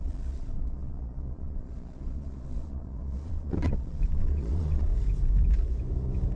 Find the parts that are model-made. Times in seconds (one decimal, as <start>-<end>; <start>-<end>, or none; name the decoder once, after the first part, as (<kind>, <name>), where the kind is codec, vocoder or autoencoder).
0.0-4.9 (vocoder, Vocos)